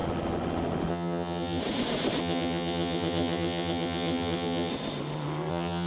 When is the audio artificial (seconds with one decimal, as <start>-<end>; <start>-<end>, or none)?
0.9-1.6; 2.2-4.7; 5.5-5.9